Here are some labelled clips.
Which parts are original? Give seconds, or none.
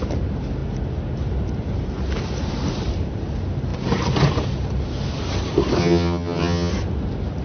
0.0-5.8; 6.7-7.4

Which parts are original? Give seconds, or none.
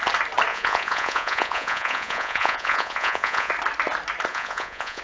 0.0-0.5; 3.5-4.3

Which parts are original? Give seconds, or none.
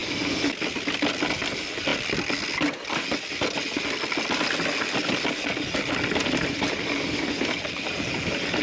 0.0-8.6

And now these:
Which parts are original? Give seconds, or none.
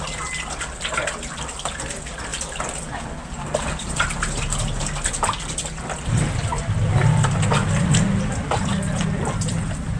0.0-10.0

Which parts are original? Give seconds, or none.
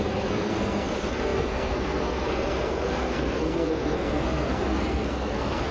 none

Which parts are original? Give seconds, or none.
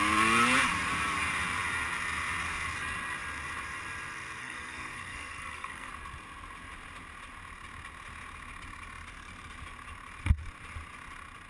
0.0-4.4; 5.9-11.5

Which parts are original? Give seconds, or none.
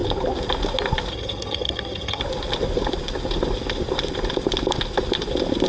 0.0-1.1; 2.2-5.7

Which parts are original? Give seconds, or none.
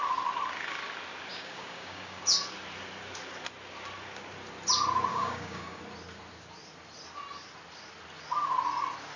0.0-1.3; 2.2-5.1; 5.8-9.2